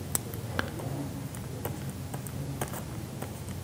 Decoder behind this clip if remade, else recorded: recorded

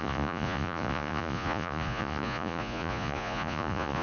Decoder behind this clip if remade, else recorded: remade, vocoder, Vocos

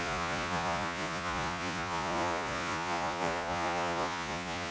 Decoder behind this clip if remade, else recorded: remade, vocoder, Vocos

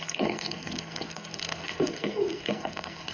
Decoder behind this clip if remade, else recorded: remade, codec, SNAC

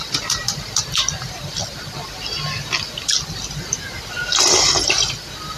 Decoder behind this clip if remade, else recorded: remade, vocoder, BigVGAN v2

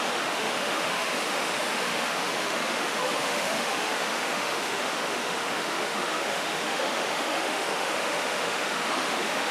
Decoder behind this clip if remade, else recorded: remade, autoencoder, DAC-VAE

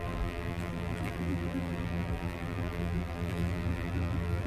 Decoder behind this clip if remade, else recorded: remade, vocoder, BigVGAN v2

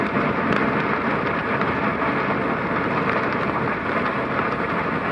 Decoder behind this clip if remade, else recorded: recorded